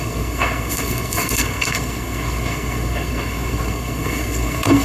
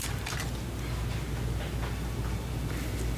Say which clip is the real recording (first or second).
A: second